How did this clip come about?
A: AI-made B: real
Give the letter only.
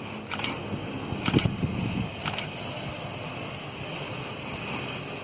B